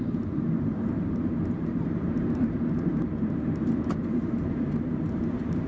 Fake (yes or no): yes